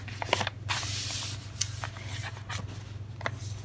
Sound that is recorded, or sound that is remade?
recorded